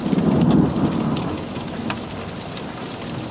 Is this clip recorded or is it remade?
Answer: recorded